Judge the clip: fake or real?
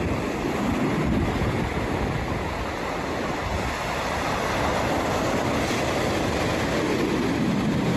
real